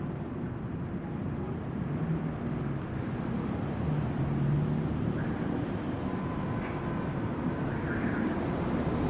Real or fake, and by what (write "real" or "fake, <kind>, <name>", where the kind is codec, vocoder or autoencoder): real